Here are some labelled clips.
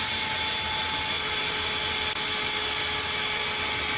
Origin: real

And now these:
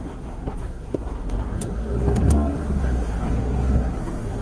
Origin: fake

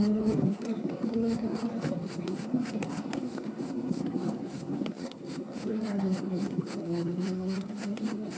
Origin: fake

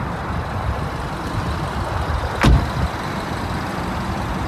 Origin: real